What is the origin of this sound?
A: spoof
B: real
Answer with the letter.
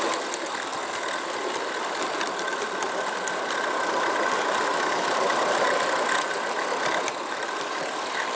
B